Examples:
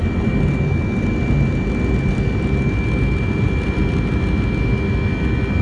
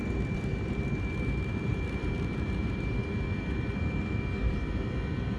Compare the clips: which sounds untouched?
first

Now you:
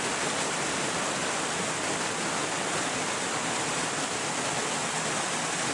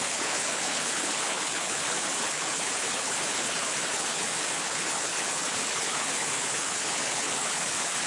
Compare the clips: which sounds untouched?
first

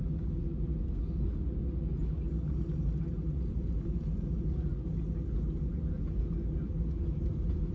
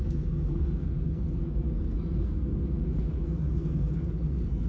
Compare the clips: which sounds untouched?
first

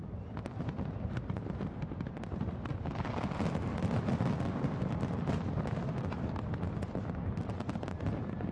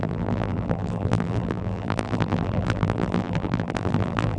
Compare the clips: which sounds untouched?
first